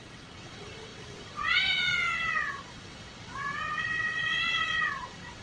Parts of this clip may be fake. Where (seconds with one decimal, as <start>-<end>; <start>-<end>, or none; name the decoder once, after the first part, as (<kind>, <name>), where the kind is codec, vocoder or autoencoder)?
0.0-5.4 (vocoder, WaveNeXt)